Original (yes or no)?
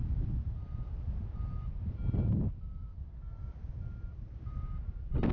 yes